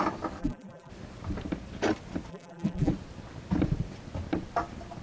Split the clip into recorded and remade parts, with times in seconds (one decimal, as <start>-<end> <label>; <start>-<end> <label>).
0.0-0.4 recorded; 0.4-0.9 remade; 0.9-2.3 recorded; 2.3-2.9 remade; 2.9-5.0 recorded